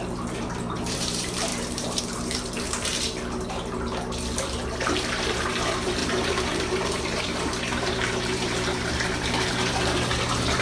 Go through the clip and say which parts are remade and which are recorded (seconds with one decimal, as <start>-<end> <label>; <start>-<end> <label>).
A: 0.0-2.9 remade; 2.9-4.8 recorded; 4.8-10.6 remade